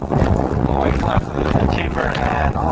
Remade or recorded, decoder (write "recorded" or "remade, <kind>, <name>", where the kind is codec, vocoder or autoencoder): remade, vocoder, WaveNeXt